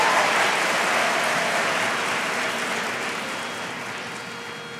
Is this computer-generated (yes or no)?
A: no